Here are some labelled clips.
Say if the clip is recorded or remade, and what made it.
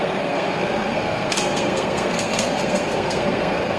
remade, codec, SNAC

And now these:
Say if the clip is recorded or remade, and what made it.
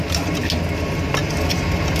recorded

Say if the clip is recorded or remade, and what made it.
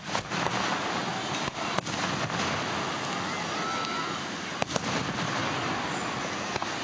recorded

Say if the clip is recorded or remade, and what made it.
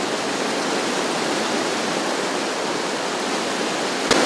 recorded